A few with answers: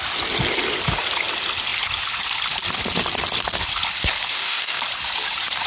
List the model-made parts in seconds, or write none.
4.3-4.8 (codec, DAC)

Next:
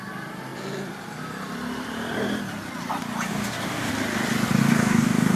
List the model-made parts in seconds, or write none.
3.3-3.9 (codec, DAC); 4.6-5.4